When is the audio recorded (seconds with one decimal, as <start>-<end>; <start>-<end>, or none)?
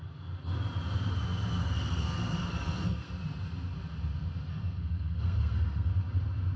0.0-1.6; 3.1-4.5; 5.9-6.6